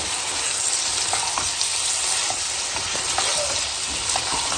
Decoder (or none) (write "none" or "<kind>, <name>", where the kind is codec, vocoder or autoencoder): none